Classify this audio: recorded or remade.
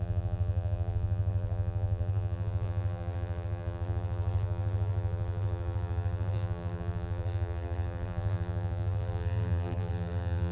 remade